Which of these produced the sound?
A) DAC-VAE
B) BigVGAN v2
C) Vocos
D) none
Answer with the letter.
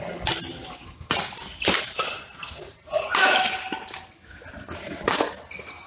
D